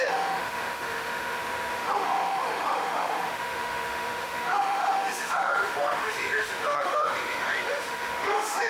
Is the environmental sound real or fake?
fake